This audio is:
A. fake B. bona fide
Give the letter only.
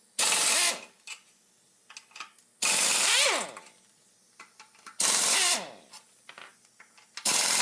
B